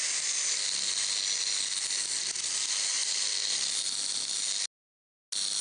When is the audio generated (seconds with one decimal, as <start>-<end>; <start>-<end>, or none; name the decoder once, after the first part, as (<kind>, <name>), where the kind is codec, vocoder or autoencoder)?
none